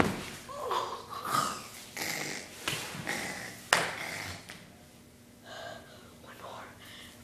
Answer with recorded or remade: recorded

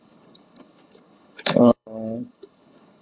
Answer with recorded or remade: remade